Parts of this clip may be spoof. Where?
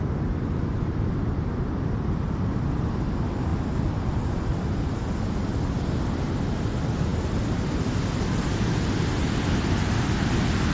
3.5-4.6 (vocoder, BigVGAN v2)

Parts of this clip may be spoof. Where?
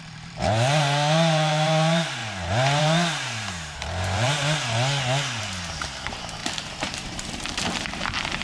0.0-2.2 (vocoder, BigVGAN v2); 2.8-4.4; 5.4-8.4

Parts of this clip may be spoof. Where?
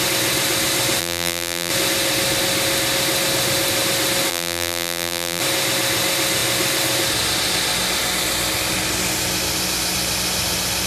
1.0-1.7 (vocoder, BigVGAN v2); 4.3-5.4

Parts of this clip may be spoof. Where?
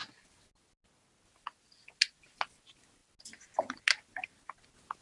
none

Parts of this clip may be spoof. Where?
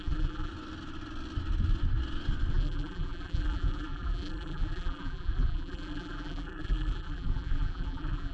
0.0-0.5 (vocoder, BigVGAN v2); 2.5-8.3